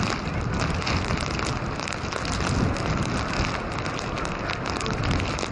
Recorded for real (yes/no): yes